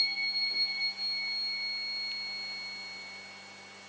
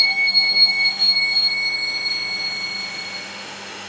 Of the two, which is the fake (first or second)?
second